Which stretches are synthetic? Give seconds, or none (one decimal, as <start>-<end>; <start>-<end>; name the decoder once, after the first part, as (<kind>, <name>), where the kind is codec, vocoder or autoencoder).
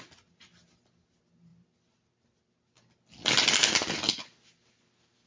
none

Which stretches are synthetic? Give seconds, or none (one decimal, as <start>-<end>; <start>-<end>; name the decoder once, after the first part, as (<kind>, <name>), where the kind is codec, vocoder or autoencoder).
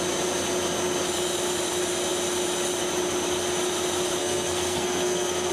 4.2-5.5 (codec, SNAC)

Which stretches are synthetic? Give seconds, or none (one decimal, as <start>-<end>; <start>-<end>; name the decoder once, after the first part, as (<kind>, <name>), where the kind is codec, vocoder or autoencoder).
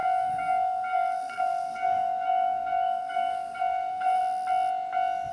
0.0-4.2 (codec, SNAC)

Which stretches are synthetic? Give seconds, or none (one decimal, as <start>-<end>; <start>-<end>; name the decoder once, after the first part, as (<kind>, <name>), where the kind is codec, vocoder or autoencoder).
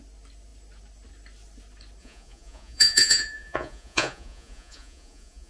2.0-5.5 (vocoder, Vocos)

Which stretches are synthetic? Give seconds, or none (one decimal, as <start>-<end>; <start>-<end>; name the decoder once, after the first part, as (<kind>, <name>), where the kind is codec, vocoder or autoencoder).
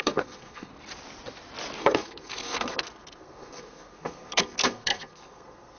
0.0-0.7 (codec, SNAC); 1.8-5.8